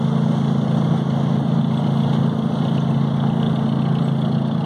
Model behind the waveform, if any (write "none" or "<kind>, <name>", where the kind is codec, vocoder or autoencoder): none